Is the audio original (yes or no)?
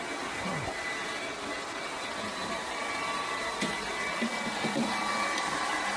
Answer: yes